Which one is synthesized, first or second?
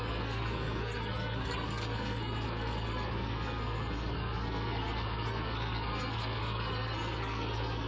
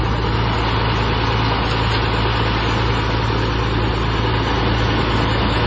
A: first